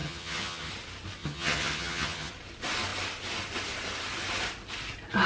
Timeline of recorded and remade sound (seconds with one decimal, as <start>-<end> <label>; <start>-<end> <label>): 0.0-0.7 remade; 0.7-1.2 recorded; 1.2-2.3 remade; 2.3-5.3 recorded